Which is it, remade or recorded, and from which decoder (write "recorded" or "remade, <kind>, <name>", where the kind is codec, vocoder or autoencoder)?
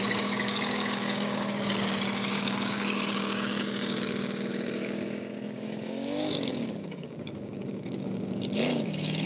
remade, codec, DAC